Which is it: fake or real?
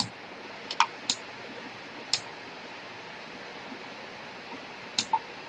real